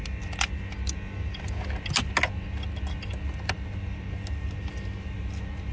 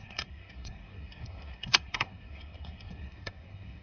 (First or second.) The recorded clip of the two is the first